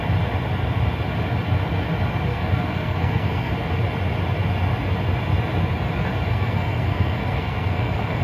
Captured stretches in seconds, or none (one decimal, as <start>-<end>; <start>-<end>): 0.0-2.3; 3.5-6.3